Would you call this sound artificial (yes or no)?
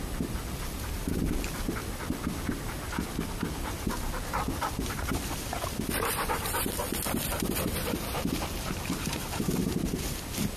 yes